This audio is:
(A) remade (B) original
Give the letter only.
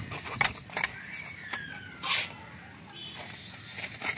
B